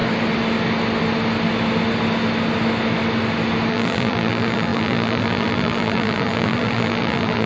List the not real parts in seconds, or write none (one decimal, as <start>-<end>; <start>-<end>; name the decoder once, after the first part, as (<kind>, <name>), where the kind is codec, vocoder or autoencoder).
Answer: 3.7-7.5 (vocoder, BigVGAN v2)